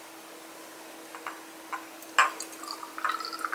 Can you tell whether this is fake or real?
real